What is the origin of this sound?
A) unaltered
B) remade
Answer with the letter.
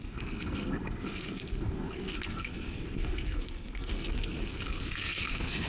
B